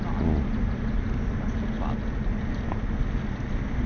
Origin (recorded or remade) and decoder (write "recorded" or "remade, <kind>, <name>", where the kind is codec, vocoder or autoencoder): recorded